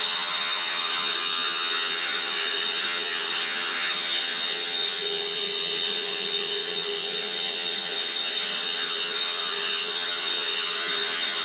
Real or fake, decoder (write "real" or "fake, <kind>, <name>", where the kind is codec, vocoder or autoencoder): fake, vocoder, HiFi-GAN